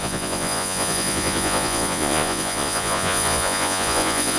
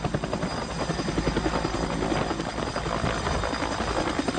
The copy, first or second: first